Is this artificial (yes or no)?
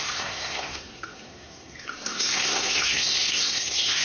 yes